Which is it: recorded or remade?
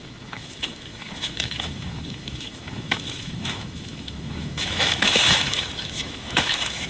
remade